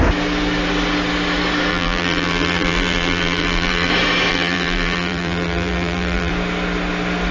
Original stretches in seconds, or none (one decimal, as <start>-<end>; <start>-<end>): 0.0-1.7; 3.9-4.3; 6.3-7.3